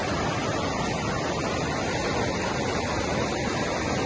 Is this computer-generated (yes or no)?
no